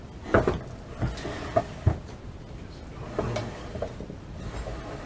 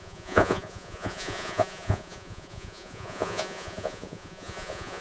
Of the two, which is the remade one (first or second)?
second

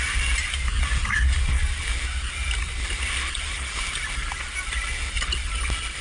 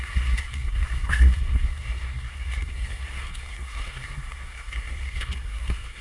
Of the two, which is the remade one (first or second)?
second